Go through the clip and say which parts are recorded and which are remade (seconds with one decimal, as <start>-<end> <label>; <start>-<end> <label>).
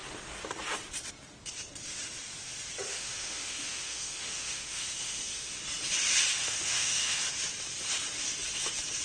0.0-2.9 recorded; 2.9-5.5 remade; 5.5-6.4 recorded; 6.4-7.2 remade; 7.2-9.0 recorded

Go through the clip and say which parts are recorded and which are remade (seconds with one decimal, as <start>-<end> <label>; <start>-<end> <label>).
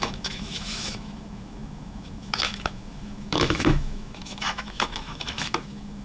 0.0-6.0 remade